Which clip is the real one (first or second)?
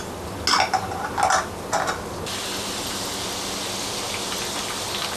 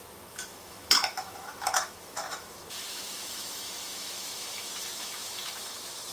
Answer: first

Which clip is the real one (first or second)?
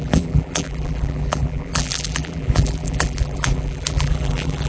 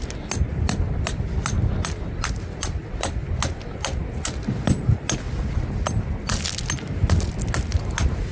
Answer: second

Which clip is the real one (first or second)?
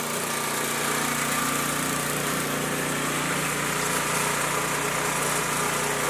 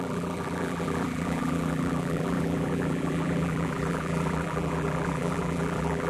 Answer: first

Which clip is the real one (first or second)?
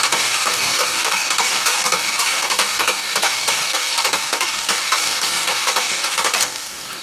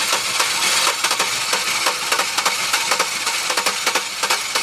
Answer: second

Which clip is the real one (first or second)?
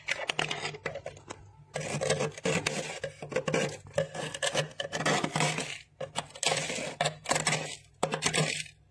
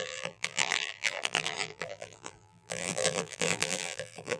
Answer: first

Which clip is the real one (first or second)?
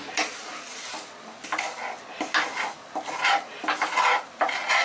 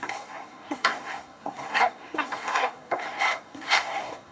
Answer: first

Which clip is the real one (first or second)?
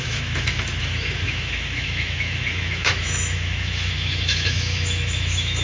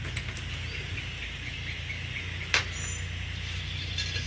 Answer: second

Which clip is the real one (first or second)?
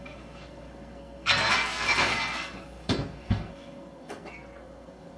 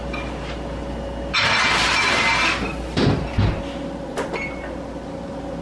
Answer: second